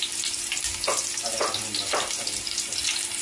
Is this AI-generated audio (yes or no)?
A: yes